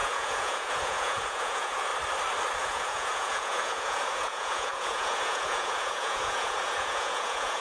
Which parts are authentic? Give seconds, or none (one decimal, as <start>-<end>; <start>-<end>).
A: 1.9-2.6